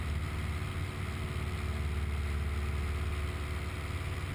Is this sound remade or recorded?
recorded